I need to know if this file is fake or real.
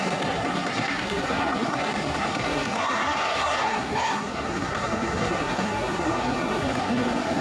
fake